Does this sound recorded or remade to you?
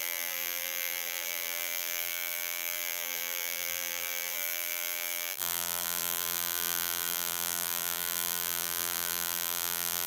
remade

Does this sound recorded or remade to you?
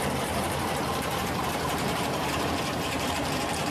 remade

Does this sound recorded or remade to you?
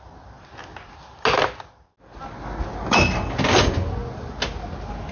recorded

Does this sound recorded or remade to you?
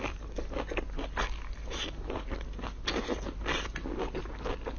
recorded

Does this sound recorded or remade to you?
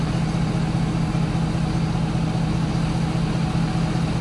recorded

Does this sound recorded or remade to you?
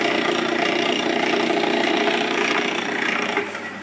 remade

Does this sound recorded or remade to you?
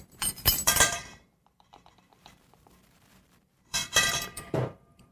remade